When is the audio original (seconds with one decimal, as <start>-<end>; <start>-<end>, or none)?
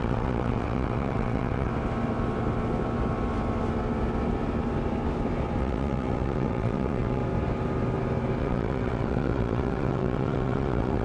1.7-5.6; 7.2-8.4